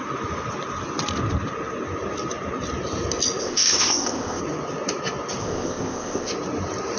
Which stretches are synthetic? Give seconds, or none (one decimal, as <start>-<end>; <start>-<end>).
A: 3.4-4.4; 5.4-6.3